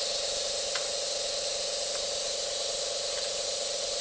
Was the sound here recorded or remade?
recorded